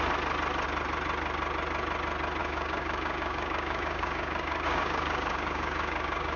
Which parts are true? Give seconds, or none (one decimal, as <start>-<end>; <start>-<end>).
0.0-2.4